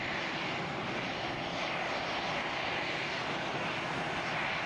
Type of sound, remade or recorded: recorded